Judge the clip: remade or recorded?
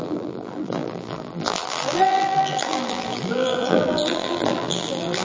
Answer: remade